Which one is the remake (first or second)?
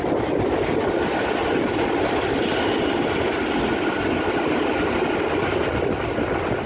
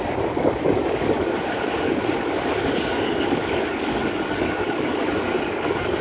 second